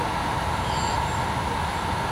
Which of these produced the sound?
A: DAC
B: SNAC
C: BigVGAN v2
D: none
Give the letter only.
D